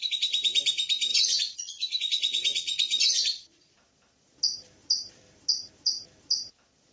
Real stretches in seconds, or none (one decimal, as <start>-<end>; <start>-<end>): 0.0-1.1; 3.7-6.9